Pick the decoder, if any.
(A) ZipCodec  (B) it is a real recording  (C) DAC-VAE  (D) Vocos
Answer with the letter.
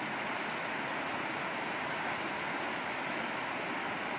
B